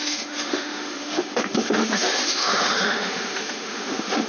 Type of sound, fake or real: fake